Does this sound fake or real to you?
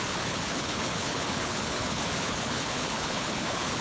fake